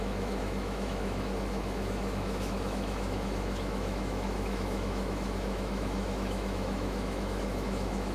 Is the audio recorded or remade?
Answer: remade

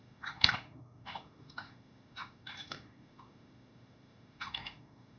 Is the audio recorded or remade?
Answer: remade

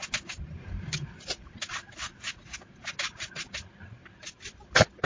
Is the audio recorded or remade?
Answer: recorded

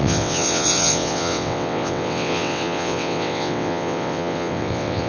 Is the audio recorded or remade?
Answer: remade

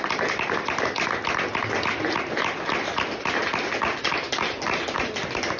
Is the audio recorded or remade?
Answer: recorded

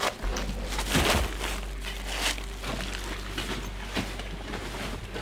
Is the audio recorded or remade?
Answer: recorded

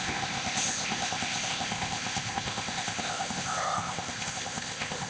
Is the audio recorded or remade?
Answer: remade